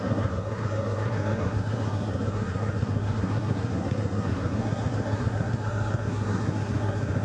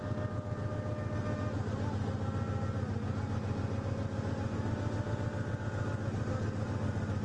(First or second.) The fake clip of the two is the first